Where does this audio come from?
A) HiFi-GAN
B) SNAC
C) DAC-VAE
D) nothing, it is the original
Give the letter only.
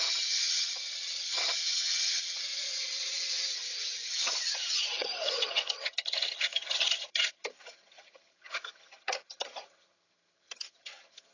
A